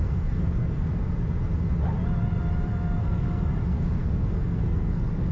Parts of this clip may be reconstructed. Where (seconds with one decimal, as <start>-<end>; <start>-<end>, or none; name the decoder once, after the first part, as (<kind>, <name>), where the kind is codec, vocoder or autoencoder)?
0.0-1.0 (codec, SNAC); 3.0-5.3

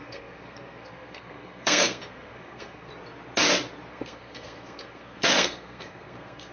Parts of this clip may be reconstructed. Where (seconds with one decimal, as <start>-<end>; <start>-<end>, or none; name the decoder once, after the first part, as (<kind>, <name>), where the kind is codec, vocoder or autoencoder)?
0.0-2.9 (codec, SNAC); 3.9-6.5

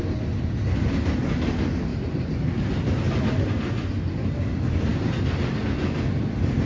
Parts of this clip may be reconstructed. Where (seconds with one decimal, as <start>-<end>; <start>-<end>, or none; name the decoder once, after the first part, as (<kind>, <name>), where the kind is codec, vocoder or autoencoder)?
none

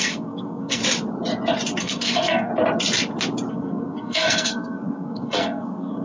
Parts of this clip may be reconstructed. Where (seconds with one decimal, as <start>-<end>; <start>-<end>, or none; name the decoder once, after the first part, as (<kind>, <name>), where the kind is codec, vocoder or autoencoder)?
0.0-0.8 (codec, SNAC); 1.8-2.5; 3.5-6.0

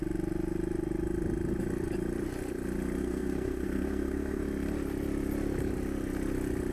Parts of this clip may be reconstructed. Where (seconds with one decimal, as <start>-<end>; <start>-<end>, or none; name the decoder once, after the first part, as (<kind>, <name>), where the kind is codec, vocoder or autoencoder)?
3.0-4.4 (codec, SNAC)